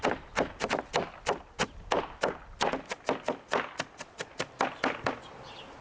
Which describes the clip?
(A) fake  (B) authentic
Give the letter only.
B